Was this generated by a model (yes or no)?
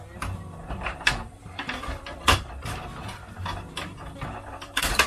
yes